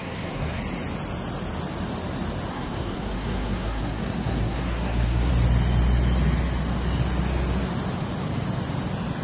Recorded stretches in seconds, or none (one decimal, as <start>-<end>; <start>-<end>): 0.6-2.5; 5.3-9.2